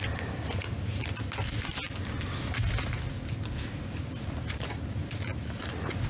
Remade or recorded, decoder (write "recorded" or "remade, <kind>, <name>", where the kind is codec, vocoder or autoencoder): recorded